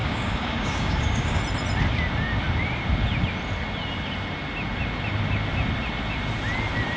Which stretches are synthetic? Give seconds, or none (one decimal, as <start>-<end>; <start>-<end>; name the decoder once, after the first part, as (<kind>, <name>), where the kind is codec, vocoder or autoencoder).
0.0-1.4 (codec, DAC)